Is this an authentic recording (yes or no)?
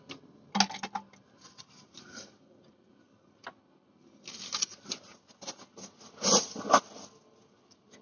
yes